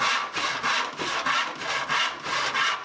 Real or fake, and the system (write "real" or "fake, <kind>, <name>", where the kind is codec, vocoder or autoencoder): real